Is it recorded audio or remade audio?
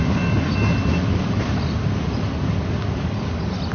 recorded